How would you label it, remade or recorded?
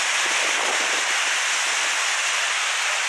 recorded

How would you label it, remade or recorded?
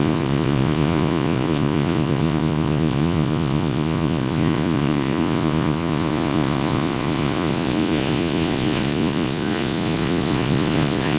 remade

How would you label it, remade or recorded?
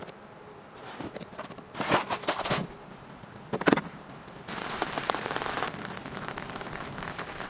remade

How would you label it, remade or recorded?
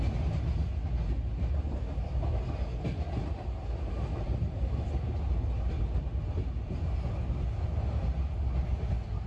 recorded